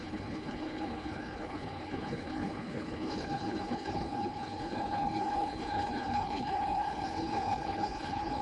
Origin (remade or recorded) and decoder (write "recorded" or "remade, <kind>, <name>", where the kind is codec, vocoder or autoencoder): remade, codec, HILCodec